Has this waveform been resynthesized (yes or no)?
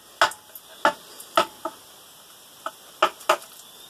no